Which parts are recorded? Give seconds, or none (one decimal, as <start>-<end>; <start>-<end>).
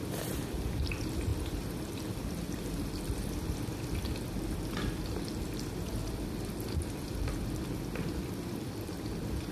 none